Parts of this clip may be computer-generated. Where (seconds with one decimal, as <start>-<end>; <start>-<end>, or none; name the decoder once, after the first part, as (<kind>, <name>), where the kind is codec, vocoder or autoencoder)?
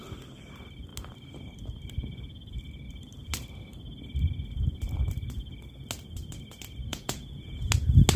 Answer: 6.9-7.7 (vocoder, Vocos)